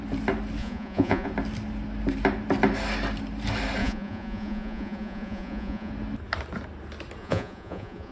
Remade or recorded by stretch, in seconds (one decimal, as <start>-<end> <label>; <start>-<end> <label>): 0.0-0.6 recorded; 0.6-1.3 remade; 1.3-3.8 recorded; 3.8-5.9 remade; 5.9-7.2 recorded; 7.2-8.1 remade